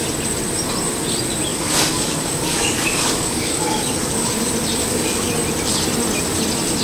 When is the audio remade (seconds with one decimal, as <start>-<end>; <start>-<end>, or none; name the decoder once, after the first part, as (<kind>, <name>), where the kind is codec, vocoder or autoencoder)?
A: 1.5-4.3 (codec, DAC); 4.8-5.3